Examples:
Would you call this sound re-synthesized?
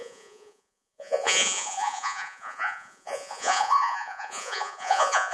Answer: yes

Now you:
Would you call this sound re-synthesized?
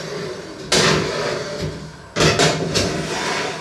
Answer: no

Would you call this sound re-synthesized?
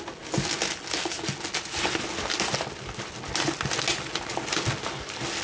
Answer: no